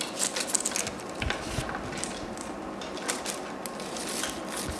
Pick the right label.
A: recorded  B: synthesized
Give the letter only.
A